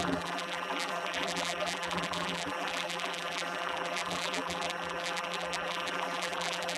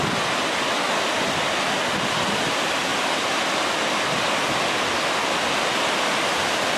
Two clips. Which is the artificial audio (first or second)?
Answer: first